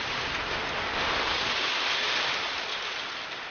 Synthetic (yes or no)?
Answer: no